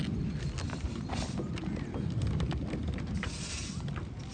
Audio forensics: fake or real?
real